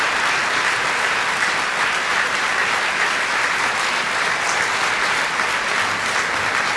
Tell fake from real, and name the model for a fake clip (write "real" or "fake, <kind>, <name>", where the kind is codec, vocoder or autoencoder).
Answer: real